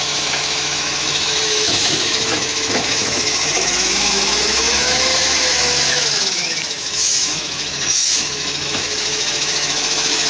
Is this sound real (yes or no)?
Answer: no